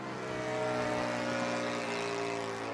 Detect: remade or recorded recorded